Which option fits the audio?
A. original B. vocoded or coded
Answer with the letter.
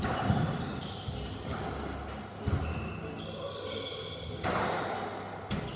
A